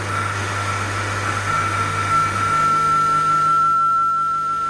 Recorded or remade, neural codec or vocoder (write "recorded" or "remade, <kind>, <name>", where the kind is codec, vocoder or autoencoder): remade, autoencoder, DAC-VAE